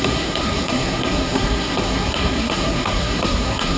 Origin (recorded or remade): remade